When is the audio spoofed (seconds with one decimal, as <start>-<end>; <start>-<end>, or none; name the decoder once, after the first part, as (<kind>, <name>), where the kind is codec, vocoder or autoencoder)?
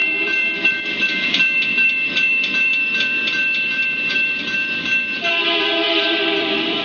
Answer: 0.0-6.8 (vocoder, BigVGAN v2)